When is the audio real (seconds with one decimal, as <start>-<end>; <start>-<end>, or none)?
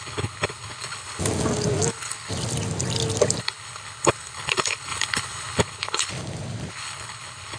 1.2-1.9; 2.3-3.4; 6.1-6.7